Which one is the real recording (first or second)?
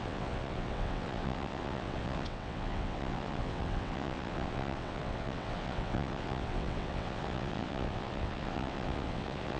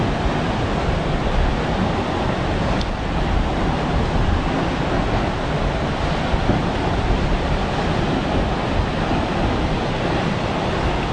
second